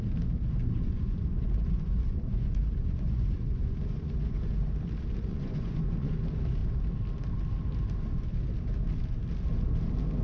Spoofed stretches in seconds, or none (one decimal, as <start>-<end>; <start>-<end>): 0.6-4.4; 5.3-6.1